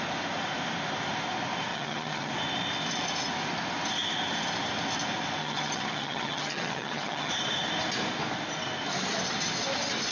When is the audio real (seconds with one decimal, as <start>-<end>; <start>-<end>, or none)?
0.0-1.7; 2.3-5.4; 7.3-10.1